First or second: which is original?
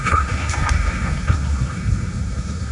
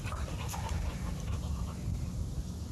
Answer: second